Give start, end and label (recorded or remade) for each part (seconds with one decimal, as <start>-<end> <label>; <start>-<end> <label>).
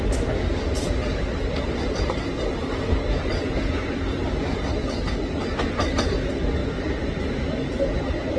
0.0-8.4 recorded